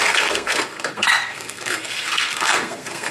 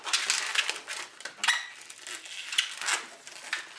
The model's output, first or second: first